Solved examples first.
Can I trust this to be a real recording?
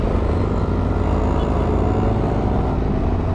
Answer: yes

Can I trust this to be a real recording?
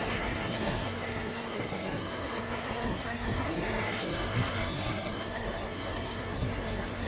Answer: no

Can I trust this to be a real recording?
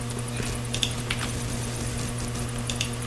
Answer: no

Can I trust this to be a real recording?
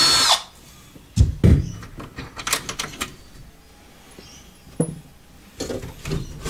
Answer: yes